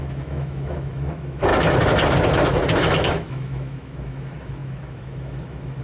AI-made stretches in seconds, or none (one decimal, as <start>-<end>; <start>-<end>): 0.0-1.5; 2.8-5.8